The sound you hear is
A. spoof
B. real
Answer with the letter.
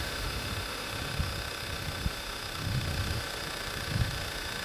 A